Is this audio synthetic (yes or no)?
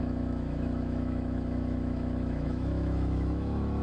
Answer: yes